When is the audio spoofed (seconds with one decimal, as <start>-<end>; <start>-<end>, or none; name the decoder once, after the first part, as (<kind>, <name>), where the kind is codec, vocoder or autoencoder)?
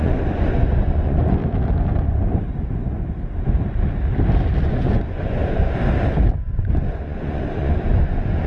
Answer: 0.0-1.4 (vocoder, Vocos); 4.6-5.8; 6.5-8.5